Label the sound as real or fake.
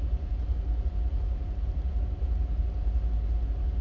real